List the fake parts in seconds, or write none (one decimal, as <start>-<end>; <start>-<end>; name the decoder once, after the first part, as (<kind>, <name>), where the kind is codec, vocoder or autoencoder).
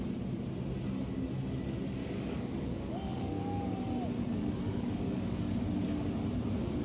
2.0-3.8 (codec, DAC); 4.3-5.6